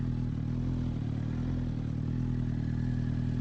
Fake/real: real